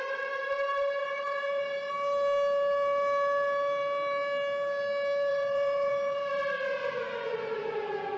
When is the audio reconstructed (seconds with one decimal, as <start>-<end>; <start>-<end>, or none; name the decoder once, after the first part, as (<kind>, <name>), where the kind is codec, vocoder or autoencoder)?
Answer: 1.0-1.9 (vocoder, Vocos); 5.3-6.2; 6.8-8.2